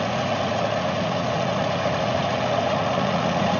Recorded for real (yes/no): no